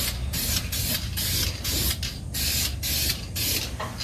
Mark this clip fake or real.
real